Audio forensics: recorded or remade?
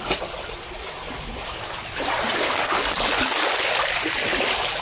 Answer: recorded